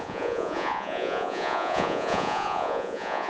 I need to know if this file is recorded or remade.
remade